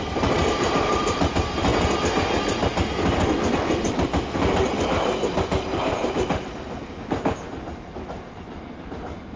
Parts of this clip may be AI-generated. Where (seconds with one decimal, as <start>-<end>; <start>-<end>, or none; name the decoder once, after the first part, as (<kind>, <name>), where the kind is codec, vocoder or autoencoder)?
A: 0.4-1.2 (vocoder, BigVGAN v2)

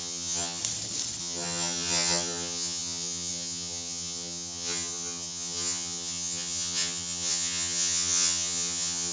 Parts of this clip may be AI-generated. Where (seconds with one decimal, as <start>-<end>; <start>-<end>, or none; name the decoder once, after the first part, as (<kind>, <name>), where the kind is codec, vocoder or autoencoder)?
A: 0.0-0.6 (vocoder, HiFi-GAN); 1.2-9.1

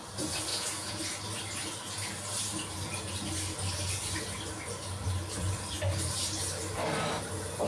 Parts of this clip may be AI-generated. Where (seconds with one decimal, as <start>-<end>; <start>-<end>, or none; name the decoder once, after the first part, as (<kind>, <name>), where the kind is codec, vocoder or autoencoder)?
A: 0.5-1.0 (vocoder, Vocos)

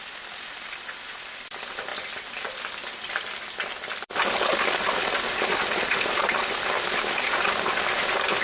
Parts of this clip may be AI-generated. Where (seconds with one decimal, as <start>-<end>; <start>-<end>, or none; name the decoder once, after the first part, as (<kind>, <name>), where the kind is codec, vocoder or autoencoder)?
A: 1.9-4.3 (vocoder, BigVGAN v2); 5.3-7.8